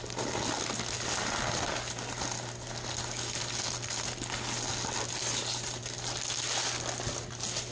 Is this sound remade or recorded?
recorded